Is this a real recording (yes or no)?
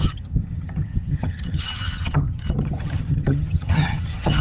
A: no